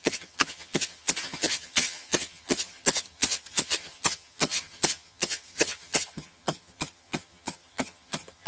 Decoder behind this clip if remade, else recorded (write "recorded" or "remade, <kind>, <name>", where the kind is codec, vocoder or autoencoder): remade, vocoder, HiFi-GAN